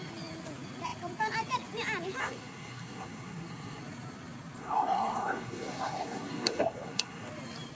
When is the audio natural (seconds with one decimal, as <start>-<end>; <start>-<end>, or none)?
0.0-2.2; 3.8-4.6; 7.3-7.8